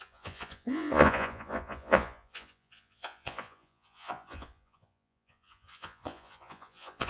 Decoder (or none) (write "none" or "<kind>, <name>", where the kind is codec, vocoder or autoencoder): vocoder, Vocos